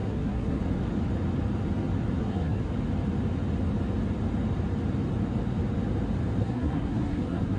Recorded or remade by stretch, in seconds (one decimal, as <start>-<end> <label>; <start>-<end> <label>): 0.0-0.6 remade; 0.6-2.2 recorded; 2.2-2.7 remade; 2.7-6.4 recorded; 6.4-7.6 remade